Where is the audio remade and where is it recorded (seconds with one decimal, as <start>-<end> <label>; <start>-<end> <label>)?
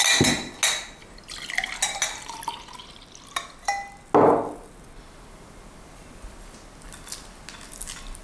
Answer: 0.0-8.2 recorded